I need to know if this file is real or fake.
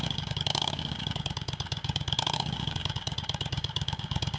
fake